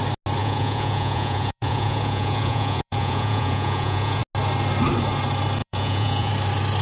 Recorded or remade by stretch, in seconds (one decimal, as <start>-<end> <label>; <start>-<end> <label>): 0.0-0.4 recorded; 0.4-4.2 remade; 4.2-5.6 recorded; 5.6-6.3 remade; 6.3-6.8 recorded